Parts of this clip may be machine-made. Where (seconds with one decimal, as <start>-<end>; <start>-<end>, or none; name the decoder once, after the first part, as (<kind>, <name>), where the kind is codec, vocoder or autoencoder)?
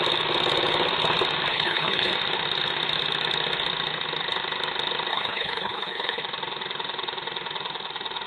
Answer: 1.5-2.1 (codec, HILCodec); 5.1-6.2